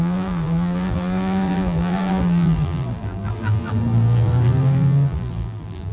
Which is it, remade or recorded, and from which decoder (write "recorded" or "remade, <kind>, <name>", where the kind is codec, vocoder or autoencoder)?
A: remade, vocoder, BigVGAN v2